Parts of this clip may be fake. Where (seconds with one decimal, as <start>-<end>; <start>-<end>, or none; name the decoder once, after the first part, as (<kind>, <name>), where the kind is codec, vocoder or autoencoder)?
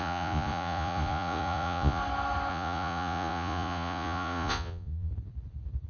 0.0-2.0 (vocoder, Vocos); 2.5-5.1